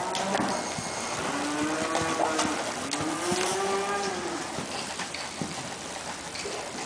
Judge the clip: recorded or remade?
recorded